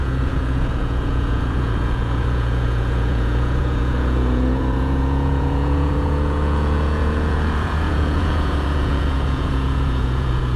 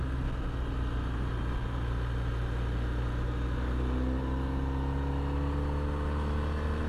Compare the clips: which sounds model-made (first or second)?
first